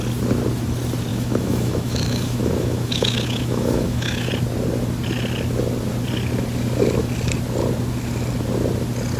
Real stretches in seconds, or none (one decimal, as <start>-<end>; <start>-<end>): 0.0-1.1; 4.3-9.2